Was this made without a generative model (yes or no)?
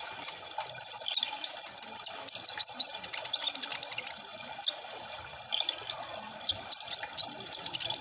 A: yes